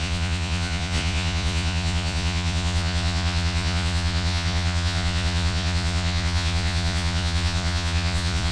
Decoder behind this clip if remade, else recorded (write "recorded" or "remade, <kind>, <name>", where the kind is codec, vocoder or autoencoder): remade, vocoder, Vocos